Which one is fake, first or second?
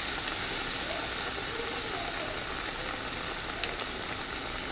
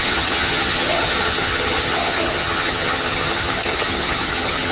second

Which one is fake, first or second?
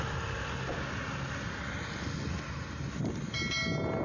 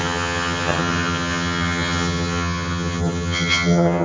second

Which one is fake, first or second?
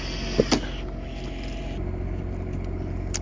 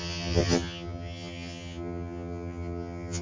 second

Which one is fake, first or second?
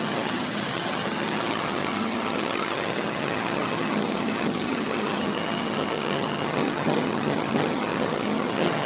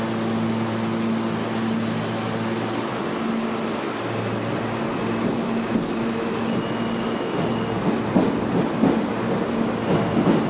first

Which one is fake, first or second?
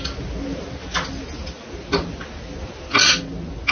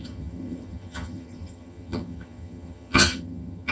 second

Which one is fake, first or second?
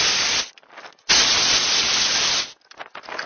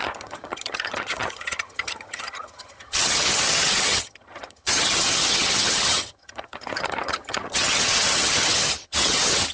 second